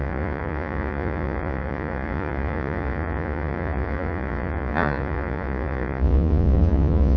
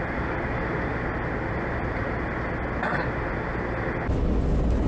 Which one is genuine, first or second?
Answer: second